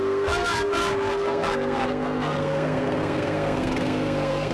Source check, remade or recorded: remade